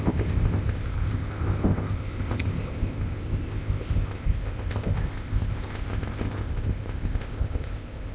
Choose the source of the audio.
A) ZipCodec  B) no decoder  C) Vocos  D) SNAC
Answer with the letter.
A